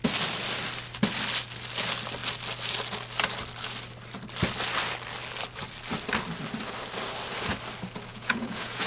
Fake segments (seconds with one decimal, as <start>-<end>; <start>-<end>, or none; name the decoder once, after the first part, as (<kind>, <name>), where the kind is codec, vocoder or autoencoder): 8.1-8.9 (vocoder, Vocos)